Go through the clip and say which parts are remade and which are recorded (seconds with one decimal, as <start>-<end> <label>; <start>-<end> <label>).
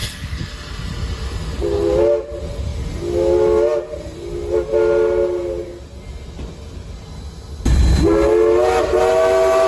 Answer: 0.0-0.5 remade; 0.5-9.7 recorded